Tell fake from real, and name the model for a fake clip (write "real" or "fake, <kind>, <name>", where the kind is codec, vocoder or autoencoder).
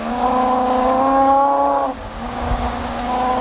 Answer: fake, codec, DAC